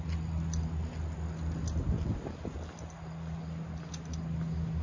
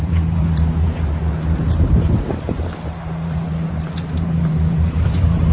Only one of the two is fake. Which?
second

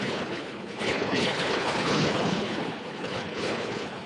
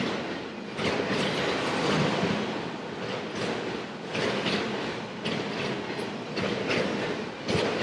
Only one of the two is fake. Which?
first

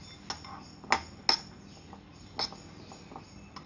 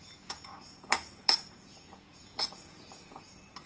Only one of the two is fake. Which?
second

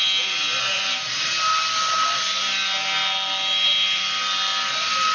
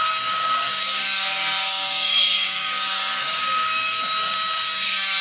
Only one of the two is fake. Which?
second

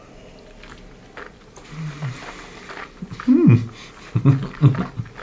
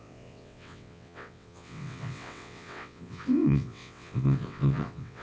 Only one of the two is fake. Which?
second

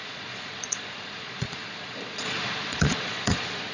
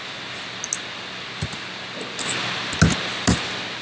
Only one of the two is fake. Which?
first